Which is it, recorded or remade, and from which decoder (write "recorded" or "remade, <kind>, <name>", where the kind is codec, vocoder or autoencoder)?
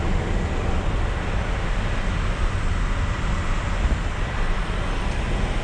recorded